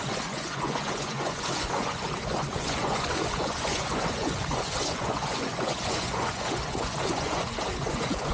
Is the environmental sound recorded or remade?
remade